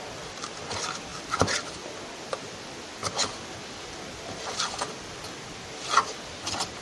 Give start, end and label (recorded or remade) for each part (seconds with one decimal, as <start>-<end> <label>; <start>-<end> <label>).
0.0-6.8 recorded